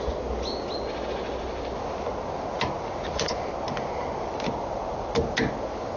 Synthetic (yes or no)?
no